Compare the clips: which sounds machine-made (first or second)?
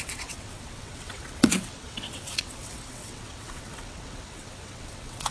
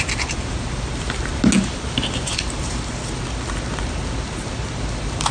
first